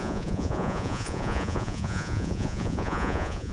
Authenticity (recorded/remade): remade